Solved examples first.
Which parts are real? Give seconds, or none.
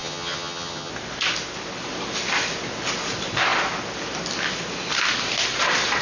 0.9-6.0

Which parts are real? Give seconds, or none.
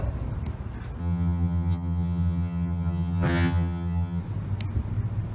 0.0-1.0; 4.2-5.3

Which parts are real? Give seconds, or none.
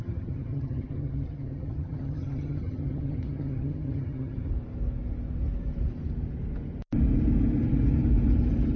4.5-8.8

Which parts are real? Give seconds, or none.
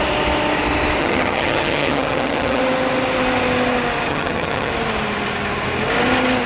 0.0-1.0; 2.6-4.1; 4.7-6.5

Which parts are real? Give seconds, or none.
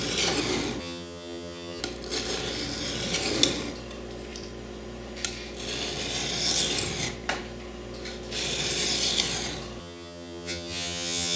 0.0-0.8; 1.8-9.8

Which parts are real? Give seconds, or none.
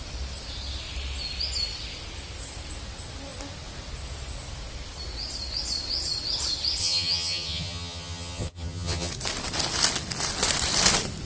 0.0-6.8; 9.1-11.2